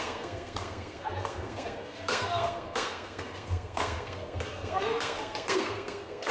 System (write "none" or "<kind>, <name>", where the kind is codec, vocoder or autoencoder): codec, SNAC